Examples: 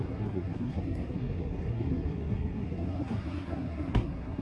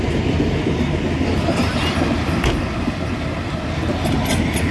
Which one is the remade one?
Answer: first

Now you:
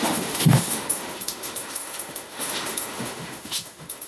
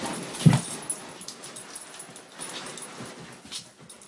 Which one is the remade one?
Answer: first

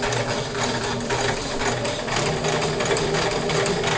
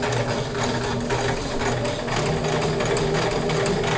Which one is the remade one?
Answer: first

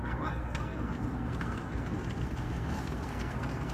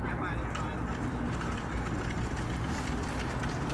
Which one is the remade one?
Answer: first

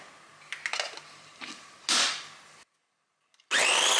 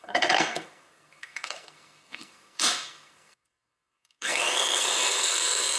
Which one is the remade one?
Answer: second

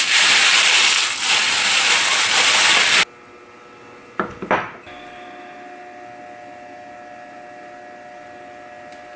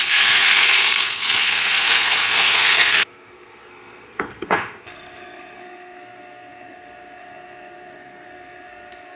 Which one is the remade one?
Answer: second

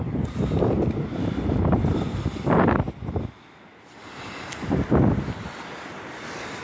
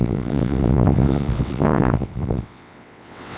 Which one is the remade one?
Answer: second